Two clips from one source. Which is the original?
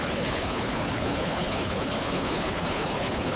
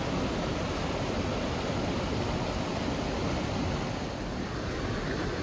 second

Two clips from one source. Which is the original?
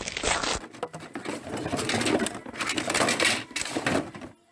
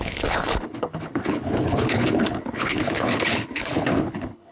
first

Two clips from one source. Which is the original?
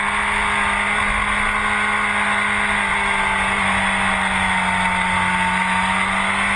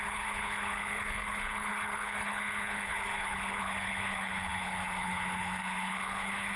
first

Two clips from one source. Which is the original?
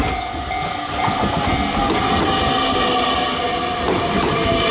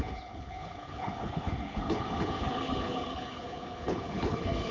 first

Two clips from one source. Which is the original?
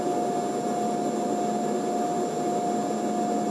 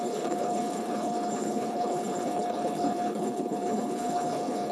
first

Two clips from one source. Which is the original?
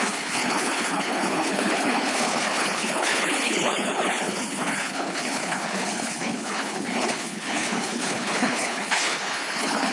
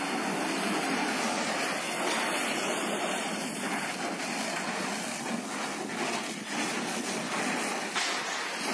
second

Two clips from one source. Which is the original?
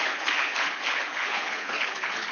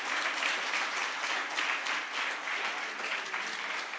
second